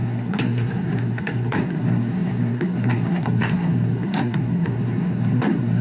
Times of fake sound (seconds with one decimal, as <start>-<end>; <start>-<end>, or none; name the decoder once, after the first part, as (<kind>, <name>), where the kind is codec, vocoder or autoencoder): 0.0-5.8 (codec, SNAC)